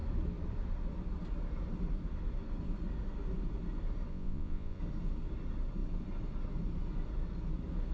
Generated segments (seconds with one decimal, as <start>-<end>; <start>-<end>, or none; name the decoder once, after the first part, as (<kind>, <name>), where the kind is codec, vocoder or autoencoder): 4.1-4.8 (vocoder, Vocos)